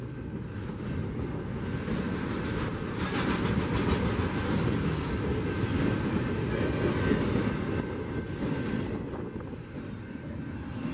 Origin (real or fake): real